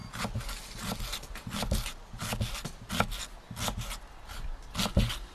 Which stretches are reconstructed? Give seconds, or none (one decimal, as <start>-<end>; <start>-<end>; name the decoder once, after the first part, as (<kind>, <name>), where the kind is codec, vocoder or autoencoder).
none